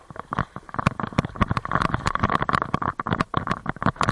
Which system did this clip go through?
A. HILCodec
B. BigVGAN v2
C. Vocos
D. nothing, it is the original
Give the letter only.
B